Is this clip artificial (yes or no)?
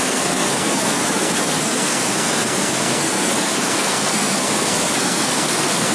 yes